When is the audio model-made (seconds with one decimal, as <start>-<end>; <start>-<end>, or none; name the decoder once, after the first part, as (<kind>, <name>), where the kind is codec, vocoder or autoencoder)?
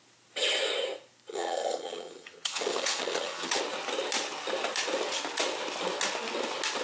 1.3-3.6 (vocoder, HiFi-GAN)